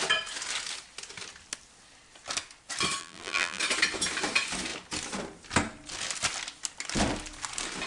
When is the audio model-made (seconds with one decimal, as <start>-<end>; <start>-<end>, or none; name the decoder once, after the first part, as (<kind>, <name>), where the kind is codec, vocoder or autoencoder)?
3.0-3.6 (vocoder, BigVGAN v2)